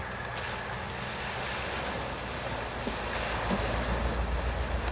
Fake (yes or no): no